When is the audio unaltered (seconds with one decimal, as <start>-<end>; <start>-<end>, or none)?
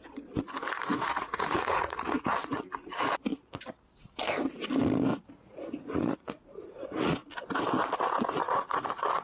0.0-0.9; 2.3-5.1; 7.3-8.4